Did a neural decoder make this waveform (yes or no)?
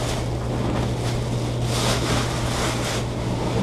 no